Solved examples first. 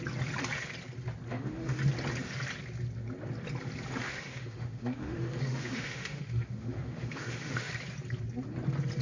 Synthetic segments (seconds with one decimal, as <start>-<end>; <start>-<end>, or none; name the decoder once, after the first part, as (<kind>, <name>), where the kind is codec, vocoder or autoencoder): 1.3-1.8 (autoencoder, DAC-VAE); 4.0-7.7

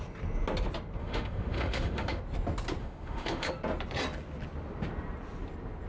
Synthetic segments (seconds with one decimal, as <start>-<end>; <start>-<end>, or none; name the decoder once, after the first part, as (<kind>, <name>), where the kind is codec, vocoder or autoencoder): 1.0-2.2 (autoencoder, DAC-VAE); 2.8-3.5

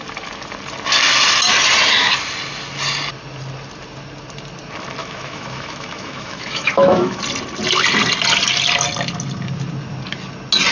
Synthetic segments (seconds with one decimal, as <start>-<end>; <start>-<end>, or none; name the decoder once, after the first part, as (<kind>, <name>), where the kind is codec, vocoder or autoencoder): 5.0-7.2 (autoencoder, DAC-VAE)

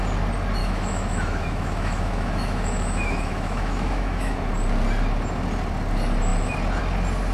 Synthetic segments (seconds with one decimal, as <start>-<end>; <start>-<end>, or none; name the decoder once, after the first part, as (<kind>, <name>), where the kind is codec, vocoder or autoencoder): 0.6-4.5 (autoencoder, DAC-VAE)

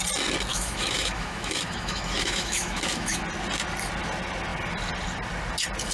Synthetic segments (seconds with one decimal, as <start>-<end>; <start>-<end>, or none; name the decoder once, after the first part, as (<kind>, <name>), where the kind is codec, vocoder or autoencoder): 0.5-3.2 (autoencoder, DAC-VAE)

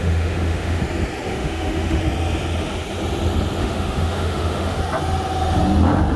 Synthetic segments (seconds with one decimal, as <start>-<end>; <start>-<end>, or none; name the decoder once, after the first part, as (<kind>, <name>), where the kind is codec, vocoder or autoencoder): 0.0-0.8 (autoencoder, DAC-VAE); 1.3-2.0; 3.6-4.8

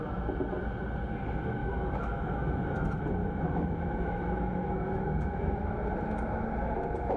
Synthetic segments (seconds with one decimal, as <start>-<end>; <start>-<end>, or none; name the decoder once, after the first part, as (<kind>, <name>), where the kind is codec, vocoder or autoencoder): 1.6-5.7 (autoencoder, DAC-VAE)

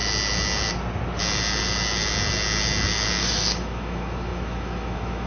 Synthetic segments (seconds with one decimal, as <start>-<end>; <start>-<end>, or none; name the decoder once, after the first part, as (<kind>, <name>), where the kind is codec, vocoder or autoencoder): 3.2-5.3 (autoencoder, DAC-VAE)